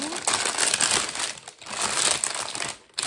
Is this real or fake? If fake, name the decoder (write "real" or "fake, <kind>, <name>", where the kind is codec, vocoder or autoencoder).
real